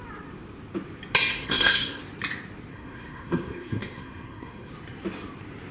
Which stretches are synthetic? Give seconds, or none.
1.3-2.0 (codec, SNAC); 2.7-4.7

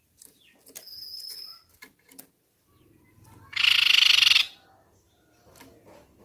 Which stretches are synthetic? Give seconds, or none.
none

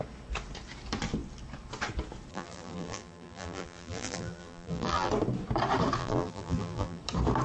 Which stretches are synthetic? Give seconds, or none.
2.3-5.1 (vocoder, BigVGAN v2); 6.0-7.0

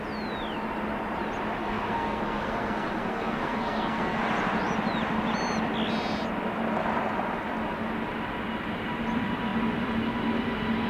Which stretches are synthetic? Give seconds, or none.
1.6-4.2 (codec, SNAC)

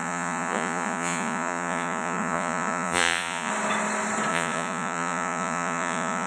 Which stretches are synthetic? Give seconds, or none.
0.0-3.5 (vocoder, Vocos); 4.3-6.3

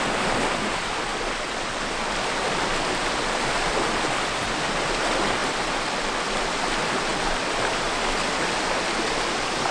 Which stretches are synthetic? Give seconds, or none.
1.1-4.5 (vocoder, BigVGAN v2)